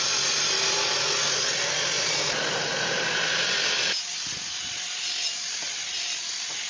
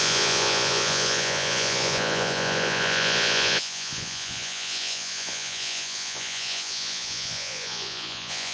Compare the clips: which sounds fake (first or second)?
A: second